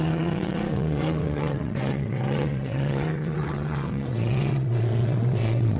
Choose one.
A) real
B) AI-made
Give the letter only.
B